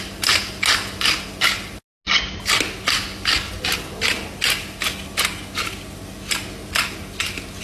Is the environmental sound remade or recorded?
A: recorded